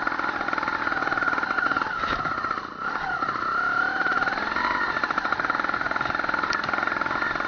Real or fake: real